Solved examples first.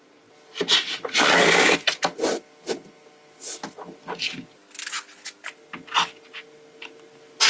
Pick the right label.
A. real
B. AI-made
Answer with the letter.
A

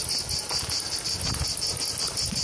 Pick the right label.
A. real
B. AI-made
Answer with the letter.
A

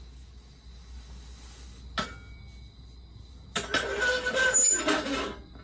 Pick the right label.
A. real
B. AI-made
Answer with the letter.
A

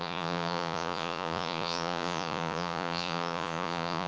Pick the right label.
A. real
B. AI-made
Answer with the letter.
B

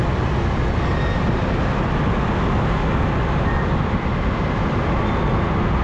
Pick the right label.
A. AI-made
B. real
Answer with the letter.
B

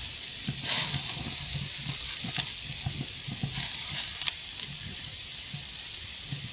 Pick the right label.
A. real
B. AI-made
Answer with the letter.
A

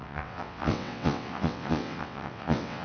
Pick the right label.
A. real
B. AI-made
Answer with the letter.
B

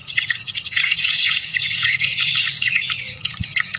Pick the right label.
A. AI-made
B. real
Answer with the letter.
A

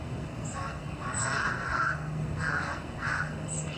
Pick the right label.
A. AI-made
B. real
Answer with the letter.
A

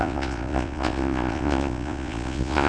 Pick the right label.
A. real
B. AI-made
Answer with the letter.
B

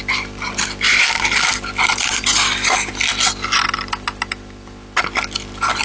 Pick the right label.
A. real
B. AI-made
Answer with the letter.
A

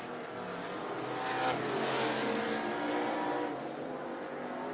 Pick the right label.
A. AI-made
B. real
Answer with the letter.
B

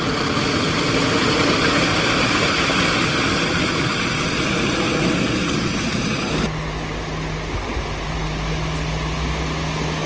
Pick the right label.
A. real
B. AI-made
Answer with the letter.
A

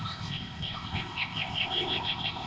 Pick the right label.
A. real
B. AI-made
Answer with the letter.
B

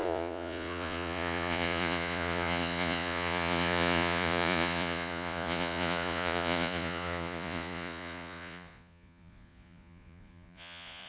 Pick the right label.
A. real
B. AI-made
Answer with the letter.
B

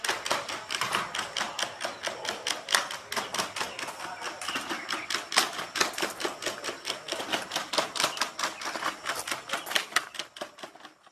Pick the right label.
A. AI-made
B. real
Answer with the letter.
B